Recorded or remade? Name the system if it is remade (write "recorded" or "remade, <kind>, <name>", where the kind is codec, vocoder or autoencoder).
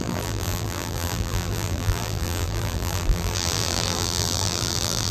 remade, vocoder, BigVGAN v2